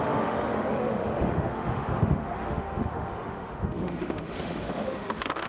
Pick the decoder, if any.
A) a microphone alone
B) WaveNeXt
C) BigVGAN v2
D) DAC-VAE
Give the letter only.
D